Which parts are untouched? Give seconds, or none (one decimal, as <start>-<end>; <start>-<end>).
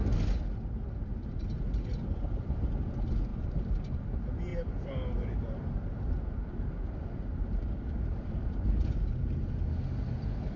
0.0-1.2; 2.7-3.3; 4.0-4.5; 9.3-10.6